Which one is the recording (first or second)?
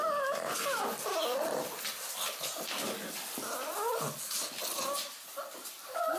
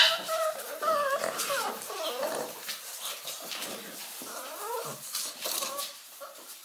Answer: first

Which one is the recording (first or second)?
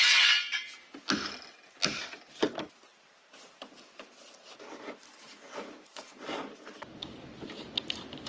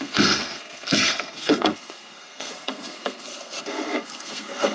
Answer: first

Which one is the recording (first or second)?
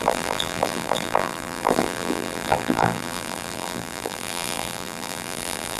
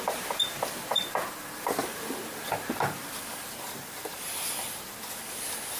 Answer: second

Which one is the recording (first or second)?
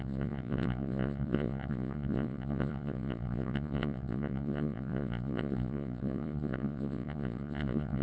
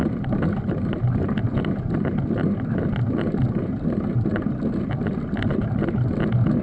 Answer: second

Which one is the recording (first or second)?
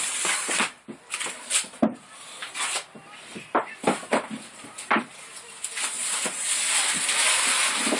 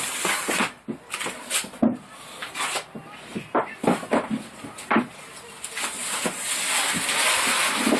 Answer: second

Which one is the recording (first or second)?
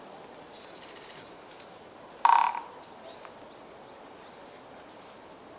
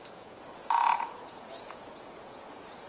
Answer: first